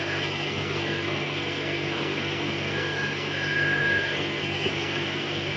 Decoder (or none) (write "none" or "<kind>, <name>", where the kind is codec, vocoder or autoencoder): codec, SNAC